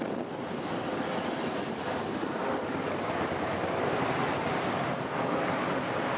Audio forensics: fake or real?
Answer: real